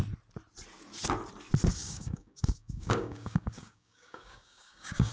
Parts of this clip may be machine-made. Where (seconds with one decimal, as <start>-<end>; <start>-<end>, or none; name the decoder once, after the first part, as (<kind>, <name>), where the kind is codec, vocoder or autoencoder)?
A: 1.8-5.1 (codec, DAC)